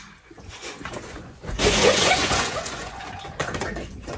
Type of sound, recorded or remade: remade